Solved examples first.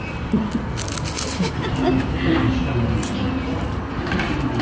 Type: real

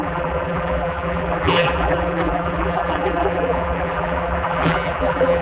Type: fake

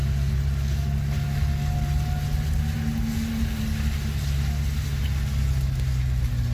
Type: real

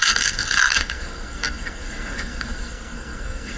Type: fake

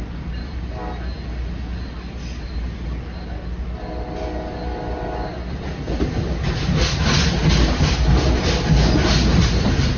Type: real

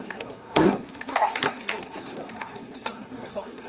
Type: fake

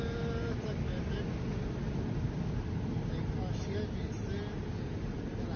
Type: real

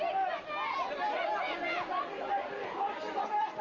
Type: real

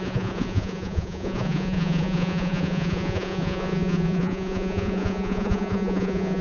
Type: fake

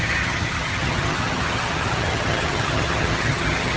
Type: fake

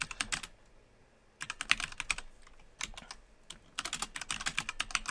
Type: real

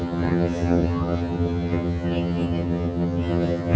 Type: fake